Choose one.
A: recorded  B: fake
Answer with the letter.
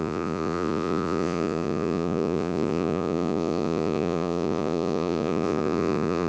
B